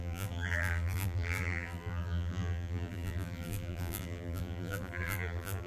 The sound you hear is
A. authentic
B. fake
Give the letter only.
B